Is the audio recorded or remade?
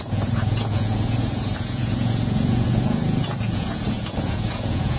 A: remade